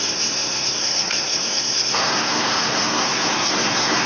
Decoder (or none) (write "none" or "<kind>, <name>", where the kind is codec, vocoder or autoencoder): codec, SNAC